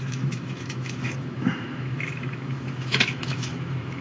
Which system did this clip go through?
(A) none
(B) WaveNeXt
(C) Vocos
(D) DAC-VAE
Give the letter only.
D